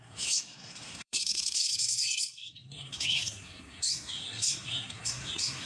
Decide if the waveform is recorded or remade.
remade